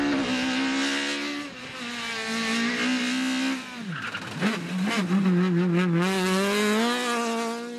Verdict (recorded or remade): recorded